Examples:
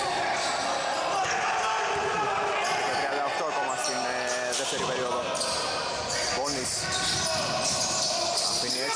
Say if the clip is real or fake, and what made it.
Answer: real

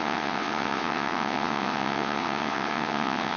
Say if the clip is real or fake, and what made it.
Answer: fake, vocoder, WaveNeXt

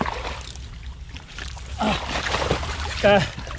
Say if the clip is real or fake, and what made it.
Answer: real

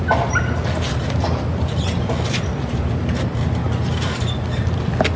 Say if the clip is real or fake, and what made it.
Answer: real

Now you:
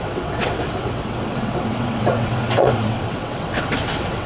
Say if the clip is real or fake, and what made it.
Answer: fake, vocoder, WaveNeXt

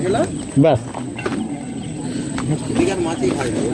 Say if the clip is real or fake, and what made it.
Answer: real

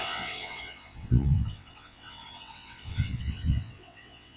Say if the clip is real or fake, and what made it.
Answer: fake, vocoder, WaveNeXt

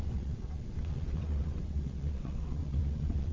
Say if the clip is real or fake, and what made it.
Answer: fake, vocoder, WaveNeXt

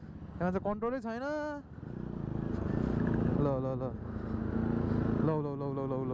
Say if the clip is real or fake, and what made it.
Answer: real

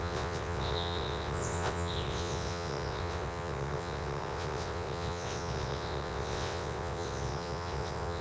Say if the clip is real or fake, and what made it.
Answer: fake, vocoder, WaveNeXt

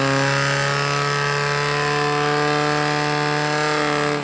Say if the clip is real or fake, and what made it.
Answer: real